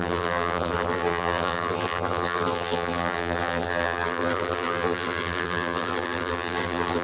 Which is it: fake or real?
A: fake